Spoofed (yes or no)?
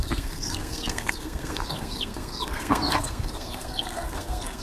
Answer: yes